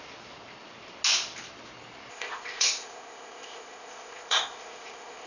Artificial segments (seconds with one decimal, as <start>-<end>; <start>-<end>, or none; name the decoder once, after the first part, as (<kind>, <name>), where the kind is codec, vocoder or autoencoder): 2.1-5.3 (codec, ZipCodec)